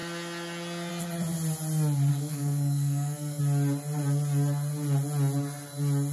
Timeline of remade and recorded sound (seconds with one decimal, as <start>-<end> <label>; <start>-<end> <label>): 0.0-2.1 recorded; 2.1-3.4 remade; 3.4-6.1 recorded